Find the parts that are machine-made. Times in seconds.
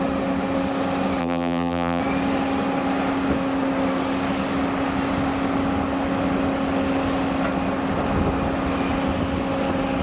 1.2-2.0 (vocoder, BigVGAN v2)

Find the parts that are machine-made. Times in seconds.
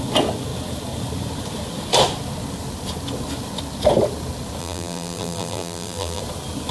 4.6-6.2 (vocoder, BigVGAN v2)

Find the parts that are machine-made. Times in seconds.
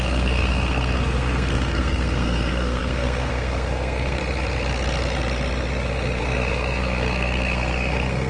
0.0-4.2 (codec, SNAC); 6.2-8.3